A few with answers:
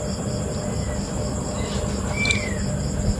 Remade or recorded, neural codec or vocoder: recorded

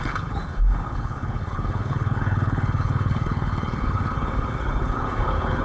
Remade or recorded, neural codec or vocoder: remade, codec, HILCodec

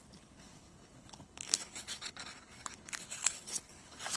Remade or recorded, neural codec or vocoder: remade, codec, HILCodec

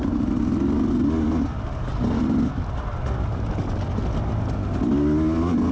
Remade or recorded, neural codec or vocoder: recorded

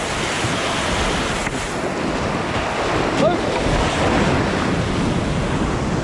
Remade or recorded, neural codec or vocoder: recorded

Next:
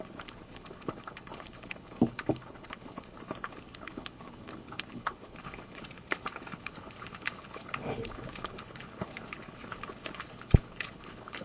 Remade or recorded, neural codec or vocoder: remade, codec, HILCodec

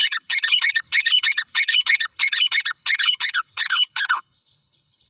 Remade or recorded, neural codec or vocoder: remade, codec, HILCodec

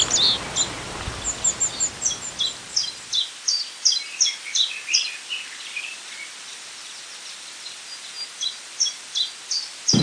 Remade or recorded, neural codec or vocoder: recorded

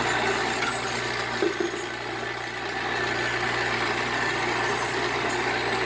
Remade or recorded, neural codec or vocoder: recorded